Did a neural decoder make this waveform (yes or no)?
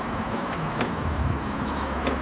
yes